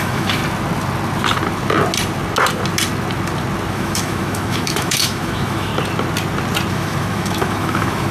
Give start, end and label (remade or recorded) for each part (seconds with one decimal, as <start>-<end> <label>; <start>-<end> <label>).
0.0-0.4 remade; 0.4-3.7 recorded; 3.7-5.7 remade; 5.7-6.7 recorded; 6.7-8.1 remade